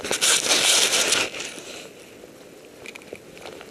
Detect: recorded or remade recorded